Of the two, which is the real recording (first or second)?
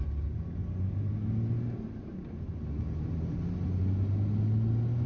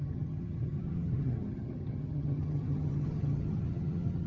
first